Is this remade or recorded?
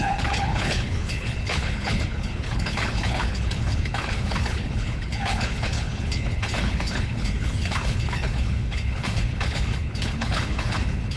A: remade